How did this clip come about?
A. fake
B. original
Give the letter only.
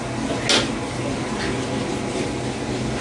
B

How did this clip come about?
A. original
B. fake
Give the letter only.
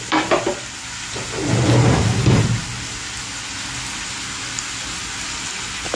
A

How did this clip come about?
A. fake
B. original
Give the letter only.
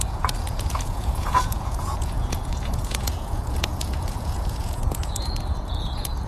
A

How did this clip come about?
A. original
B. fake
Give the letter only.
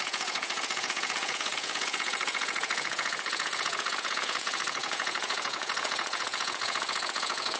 B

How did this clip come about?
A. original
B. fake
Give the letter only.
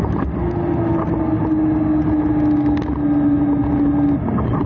A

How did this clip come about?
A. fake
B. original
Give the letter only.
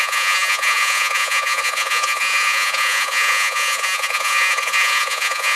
A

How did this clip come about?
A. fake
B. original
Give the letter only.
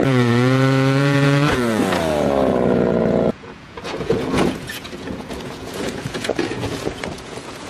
A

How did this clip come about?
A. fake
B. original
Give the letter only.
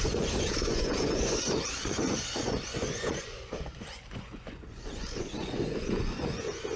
A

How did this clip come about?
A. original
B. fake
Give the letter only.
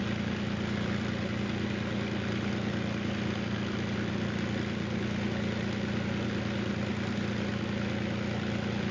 A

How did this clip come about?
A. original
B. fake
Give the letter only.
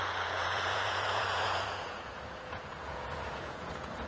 B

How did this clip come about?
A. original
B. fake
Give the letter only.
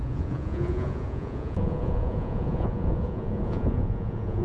B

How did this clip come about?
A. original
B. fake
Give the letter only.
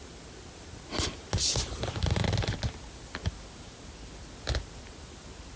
A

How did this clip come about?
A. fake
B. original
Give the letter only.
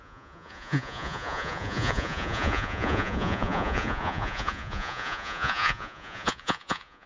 A